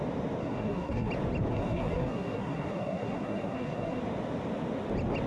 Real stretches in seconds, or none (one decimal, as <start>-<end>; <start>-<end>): 0.0-0.4; 1.1-1.5; 4.0-5.3